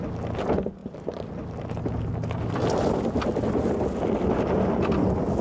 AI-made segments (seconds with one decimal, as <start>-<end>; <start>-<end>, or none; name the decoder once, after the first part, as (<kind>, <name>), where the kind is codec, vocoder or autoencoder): 0.8-4.0 (vocoder, BigVGAN v2)